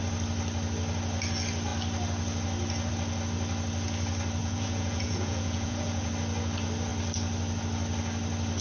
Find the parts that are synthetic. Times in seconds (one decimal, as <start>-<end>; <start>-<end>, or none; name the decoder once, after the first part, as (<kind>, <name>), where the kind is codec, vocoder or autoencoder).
4.4-6.1 (vocoder, Vocos)